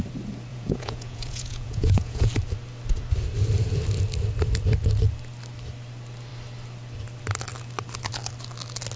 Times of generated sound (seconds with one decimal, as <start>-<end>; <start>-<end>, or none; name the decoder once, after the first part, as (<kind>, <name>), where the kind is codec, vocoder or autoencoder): 0.5-2.3 (vocoder, Vocos)

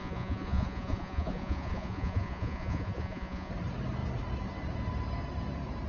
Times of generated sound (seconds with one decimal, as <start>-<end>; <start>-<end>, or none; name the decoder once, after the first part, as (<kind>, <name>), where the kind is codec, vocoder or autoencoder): 0.0-3.5 (vocoder, Vocos)

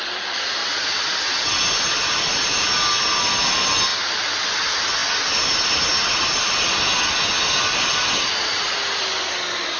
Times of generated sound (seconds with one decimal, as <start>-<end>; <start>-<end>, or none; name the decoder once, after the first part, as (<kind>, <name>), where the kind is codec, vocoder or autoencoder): none